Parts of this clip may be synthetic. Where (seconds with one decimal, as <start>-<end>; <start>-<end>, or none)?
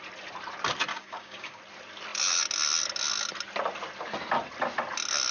0.9-1.6